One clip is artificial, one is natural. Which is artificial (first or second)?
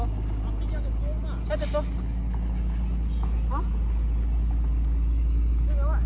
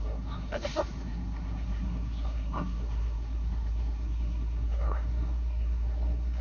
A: second